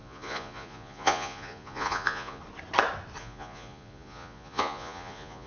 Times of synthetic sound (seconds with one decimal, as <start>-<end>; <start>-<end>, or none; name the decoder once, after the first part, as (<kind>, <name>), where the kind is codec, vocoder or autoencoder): 0.0-2.4 (vocoder, Vocos); 3.2-5.5